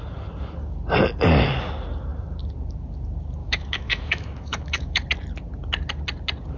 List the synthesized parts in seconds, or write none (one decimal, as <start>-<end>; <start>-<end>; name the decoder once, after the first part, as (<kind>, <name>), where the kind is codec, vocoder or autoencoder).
3.4-5.0 (autoencoder, DAC-VAE)